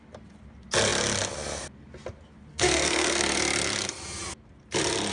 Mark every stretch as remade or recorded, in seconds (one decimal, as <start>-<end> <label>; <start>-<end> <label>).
0.0-2.5 recorded; 2.5-3.4 remade; 3.4-5.1 recorded